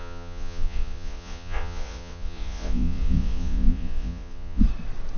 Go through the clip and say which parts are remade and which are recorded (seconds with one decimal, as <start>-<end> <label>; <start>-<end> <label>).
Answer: 0.0-4.6 remade; 4.6-5.2 recorded